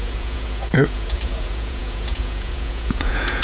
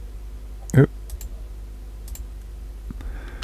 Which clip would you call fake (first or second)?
first